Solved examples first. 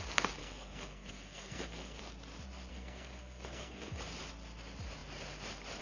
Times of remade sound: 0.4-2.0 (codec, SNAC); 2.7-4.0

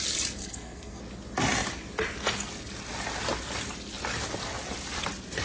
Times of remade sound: 0.4-1.0 (codec, SNAC)

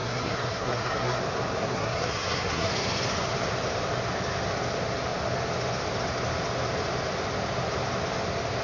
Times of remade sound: 0.0-1.2 (codec, SNAC); 1.6-2.7

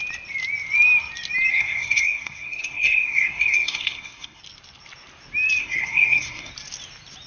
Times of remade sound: 1.5-4.4 (codec, SNAC); 5.6-6.5

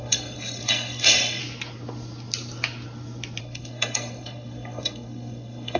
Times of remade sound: 0.0-1.4 (codec, SNAC); 3.4-5.8

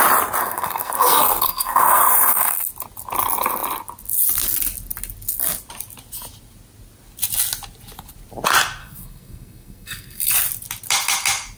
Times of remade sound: 0.4-2.7 (codec, SNAC); 8.8-10.3

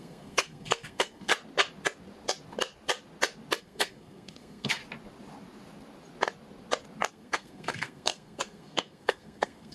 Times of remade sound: 0.0-1.3 (codec, SNAC); 3.6-4.8; 7.1-9.7